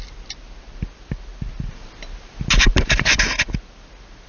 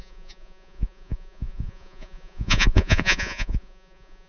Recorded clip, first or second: first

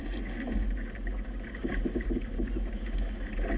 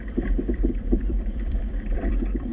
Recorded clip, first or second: first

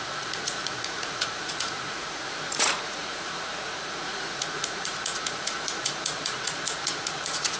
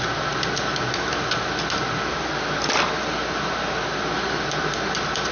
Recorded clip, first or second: second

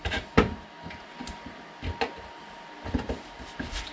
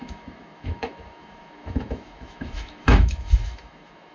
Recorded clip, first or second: first